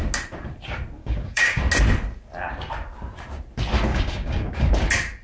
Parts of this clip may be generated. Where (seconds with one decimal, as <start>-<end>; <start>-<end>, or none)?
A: 1.0-1.6; 3.9-4.7